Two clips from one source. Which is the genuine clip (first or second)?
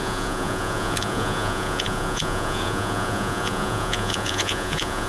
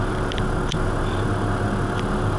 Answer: second